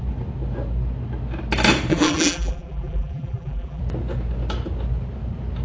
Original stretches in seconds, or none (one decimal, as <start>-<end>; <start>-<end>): 0.0-1.9; 3.8-5.6